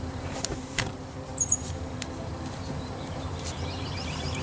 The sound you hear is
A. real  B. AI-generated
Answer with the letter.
B